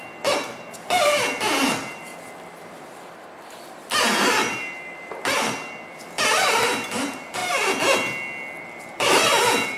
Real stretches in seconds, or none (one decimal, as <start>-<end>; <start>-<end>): 2.1-3.7; 7.4-8.6